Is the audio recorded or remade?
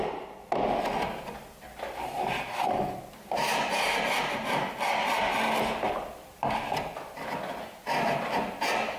recorded